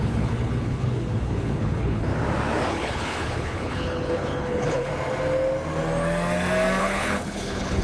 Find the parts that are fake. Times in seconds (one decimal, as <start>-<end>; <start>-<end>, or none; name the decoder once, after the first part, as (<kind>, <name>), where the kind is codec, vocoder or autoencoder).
0.0-2.1 (codec, HILCodec); 2.7-4.9; 6.8-7.8